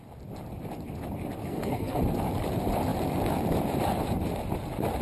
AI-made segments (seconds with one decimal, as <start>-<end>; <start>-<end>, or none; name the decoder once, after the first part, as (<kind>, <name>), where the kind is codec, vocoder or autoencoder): 1.4-2.0 (codec, SNAC)